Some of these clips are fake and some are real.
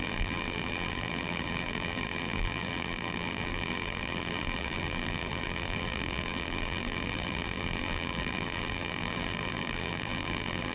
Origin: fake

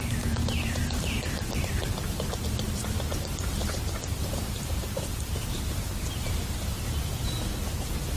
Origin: fake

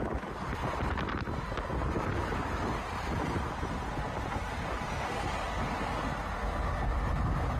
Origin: real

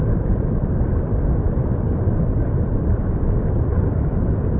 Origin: fake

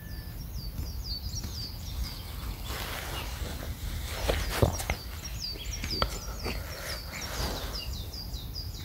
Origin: real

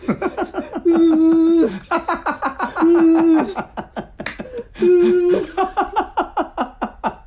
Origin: real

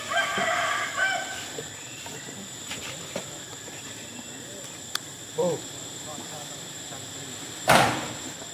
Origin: fake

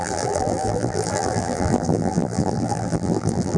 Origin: fake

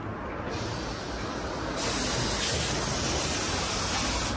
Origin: real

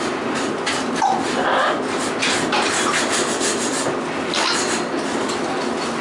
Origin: real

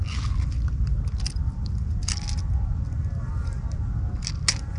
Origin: real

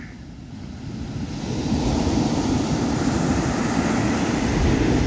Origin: real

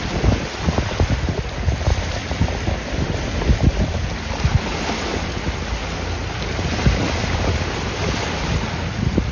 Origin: real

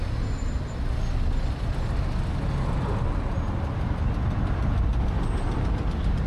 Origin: real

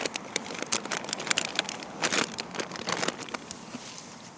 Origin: fake